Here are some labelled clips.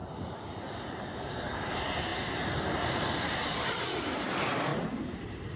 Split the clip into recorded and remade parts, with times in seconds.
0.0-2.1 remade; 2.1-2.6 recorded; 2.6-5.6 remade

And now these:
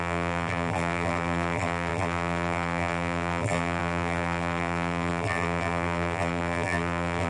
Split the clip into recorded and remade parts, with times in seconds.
0.0-7.3 remade

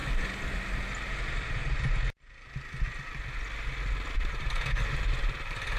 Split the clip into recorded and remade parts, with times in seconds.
0.0-1.2 recorded; 1.2-1.6 remade; 1.6-4.3 recorded; 4.3-5.8 remade

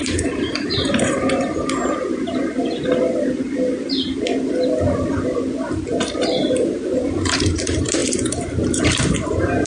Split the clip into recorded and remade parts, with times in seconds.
0.0-1.8 remade; 1.8-5.7 recorded; 5.7-9.7 remade

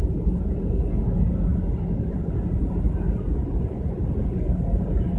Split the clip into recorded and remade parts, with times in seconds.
0.0-3.4 recorded; 3.4-4.0 remade; 4.0-5.2 recorded